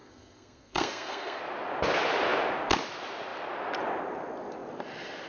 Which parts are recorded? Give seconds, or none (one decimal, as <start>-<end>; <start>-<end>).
1.4-5.3